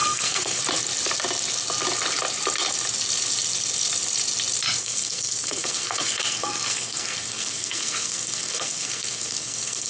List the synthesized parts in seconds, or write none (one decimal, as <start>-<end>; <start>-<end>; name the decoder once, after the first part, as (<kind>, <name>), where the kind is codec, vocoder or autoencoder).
0.0-0.6 (codec, SNAC); 4.8-9.9